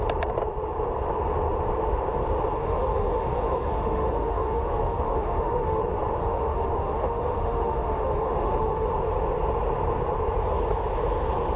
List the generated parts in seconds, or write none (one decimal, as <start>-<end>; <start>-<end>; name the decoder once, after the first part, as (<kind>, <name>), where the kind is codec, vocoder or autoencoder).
2.6-5.8 (autoencoder, DAC-VAE); 6.2-8.9